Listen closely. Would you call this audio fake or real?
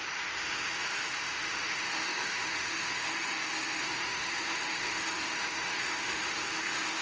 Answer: fake